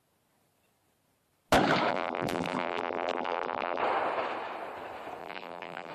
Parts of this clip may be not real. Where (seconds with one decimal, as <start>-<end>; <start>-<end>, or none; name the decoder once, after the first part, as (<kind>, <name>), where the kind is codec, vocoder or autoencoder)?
1.9-3.8 (vocoder, BigVGAN v2); 5.2-5.9